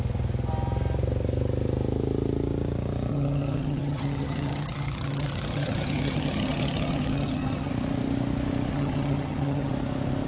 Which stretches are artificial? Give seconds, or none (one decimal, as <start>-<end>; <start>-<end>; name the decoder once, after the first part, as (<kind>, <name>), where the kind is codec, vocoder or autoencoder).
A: 3.1-7.7 (vocoder, HiFi-GAN); 8.7-9.7